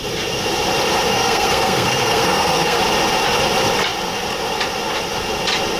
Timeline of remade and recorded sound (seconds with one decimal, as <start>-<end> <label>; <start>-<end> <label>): 0.0-1.1 recorded; 1.1-2.8 remade; 2.8-5.8 recorded